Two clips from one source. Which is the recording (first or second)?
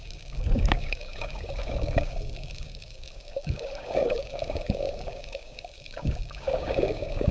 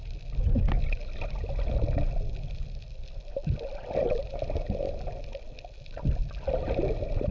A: second